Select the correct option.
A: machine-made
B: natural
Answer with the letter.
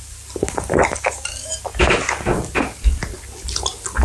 B